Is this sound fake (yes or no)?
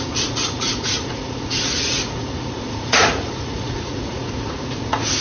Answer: yes